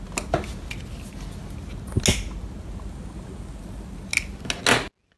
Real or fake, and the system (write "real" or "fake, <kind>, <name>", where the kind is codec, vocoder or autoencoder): real